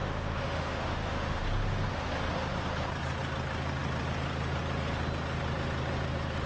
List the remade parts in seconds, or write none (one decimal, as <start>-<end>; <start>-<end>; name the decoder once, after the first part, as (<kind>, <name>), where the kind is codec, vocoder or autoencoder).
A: 0.0-1.4 (autoencoder, DAC-VAE)